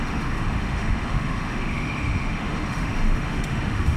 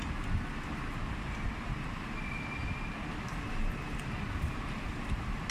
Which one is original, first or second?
second